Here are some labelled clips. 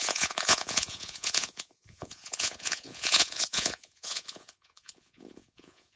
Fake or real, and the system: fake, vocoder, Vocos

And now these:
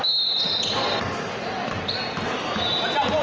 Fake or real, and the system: real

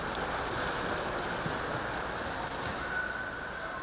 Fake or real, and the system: real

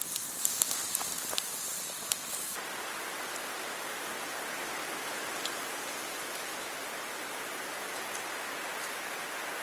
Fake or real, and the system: real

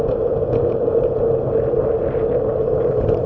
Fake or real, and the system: real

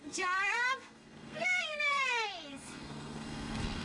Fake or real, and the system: fake, codec, SNAC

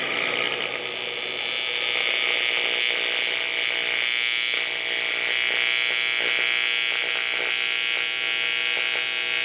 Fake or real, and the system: real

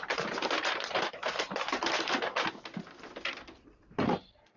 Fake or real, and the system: real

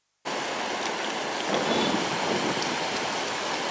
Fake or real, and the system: real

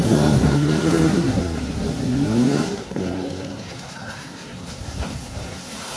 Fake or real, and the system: fake, codec, SNAC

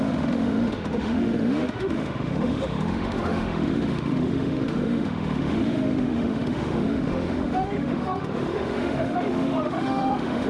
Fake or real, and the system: fake, autoencoder, DAC-VAE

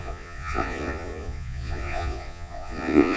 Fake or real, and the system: fake, vocoder, Vocos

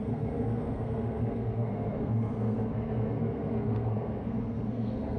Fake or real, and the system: fake, codec, SNAC